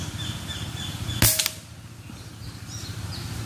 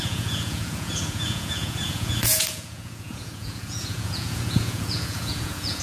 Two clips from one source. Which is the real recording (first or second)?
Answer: first